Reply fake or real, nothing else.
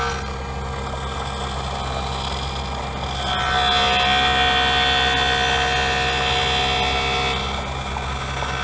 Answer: real